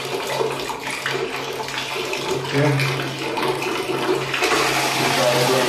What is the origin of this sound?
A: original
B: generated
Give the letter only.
A